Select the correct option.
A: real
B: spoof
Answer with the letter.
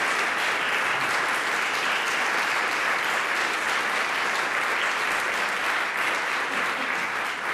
A